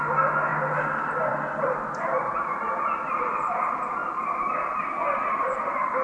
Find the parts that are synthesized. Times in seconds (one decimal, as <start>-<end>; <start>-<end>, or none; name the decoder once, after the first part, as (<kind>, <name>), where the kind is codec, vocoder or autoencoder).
0.5-2.3 (vocoder, BigVGAN v2); 4.0-5.0

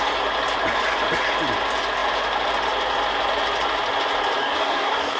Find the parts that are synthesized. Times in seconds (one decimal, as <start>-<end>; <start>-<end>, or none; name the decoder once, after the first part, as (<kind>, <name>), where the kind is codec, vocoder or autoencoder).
4.4-5.2 (codec, DAC)

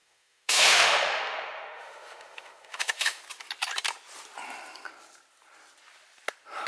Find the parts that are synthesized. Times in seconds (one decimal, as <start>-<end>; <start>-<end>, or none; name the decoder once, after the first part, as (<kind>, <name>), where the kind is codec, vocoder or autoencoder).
0.0-3.2 (autoencoder, DAC-VAE)